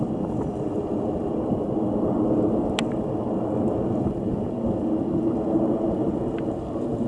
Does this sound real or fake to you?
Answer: real